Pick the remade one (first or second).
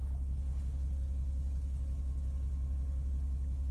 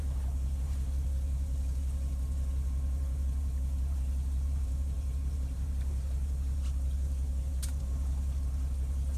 second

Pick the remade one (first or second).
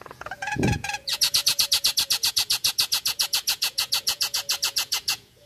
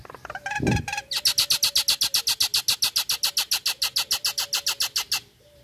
first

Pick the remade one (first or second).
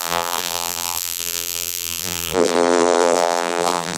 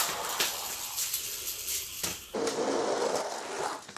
first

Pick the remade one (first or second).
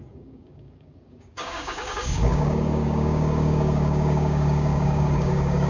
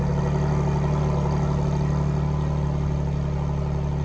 first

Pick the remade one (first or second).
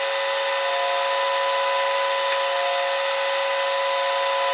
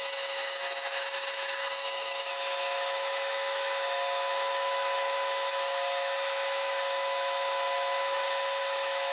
second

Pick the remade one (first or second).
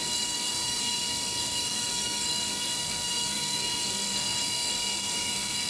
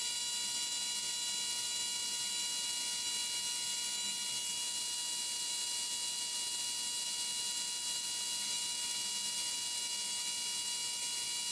first